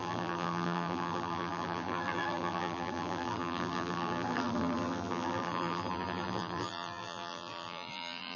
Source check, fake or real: fake